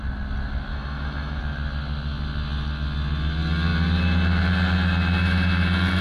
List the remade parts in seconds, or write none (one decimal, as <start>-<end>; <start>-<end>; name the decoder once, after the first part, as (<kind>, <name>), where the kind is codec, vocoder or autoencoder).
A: 0.7-1.4 (autoencoder, DAC-VAE)